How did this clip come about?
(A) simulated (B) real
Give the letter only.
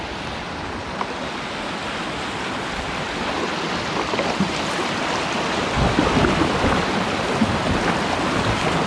B